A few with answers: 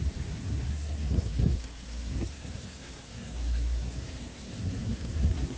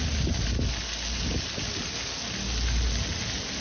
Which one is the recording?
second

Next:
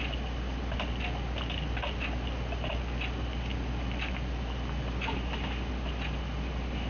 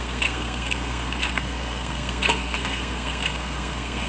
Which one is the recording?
first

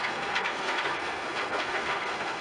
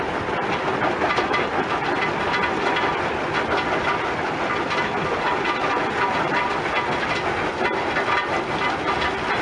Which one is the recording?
second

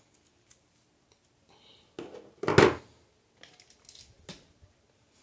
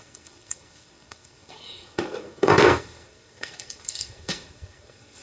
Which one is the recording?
first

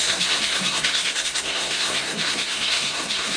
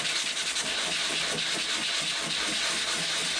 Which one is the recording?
second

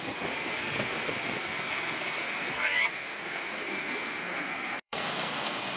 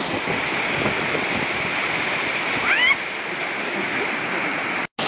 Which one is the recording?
second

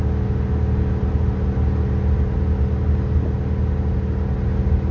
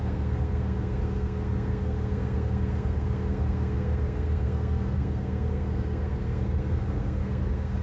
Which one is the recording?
first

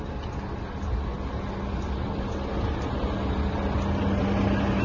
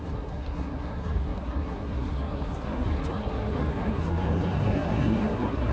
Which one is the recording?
first